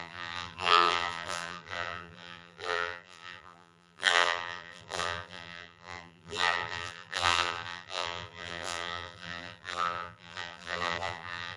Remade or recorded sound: remade